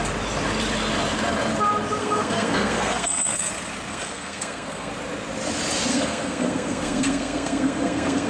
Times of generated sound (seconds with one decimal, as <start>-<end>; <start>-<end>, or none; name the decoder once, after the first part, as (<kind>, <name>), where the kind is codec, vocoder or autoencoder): 2.0-3.5 (codec, SNAC); 3.9-4.9; 5.9-8.3